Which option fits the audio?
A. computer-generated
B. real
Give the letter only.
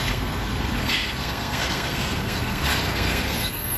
A